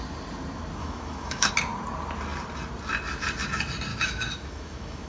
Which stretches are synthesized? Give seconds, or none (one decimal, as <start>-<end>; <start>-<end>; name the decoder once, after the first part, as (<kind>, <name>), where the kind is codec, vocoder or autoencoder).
0.8-1.5 (autoencoder, DAC-VAE); 3.9-5.1